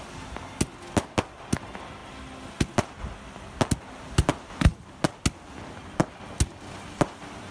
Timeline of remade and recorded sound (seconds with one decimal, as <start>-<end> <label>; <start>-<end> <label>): 0.0-7.5 recorded